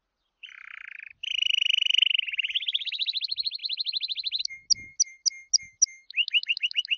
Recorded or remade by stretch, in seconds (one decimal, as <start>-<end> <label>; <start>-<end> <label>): 0.0-7.0 recorded